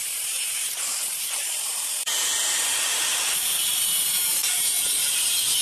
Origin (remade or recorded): remade